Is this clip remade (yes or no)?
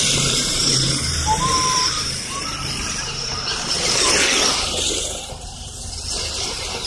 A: yes